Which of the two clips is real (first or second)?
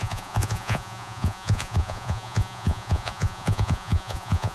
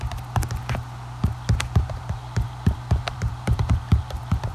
second